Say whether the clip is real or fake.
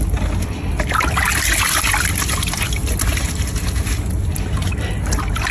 real